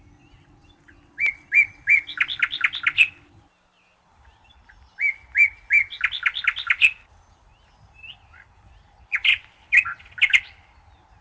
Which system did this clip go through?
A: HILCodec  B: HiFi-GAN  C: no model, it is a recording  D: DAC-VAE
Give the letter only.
C